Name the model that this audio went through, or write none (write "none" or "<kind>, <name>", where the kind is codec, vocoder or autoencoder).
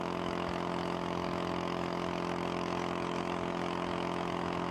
autoencoder, DAC-VAE